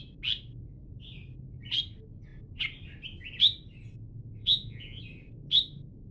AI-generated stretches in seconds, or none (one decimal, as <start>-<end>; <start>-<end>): 4.4-5.0